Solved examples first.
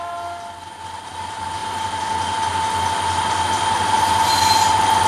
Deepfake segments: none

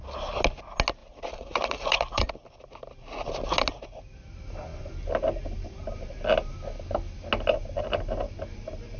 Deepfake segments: 1.0-2.3 (vocoder, Vocos)

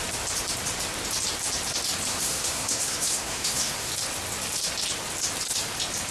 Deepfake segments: 2.1-3.9 (codec, SNAC)

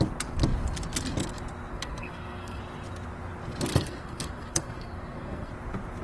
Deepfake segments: 1.7-2.6 (codec, SNAC); 3.7-5.5

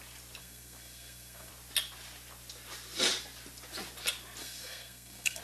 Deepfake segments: 0.4-1.5 (codec, SNAC); 4.4-5.4

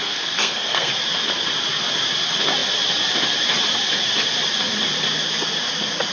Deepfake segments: 0.0-0.9 (codec, SNAC)

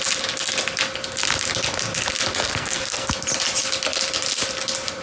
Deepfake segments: 2.4-3.1 (codec, SNAC)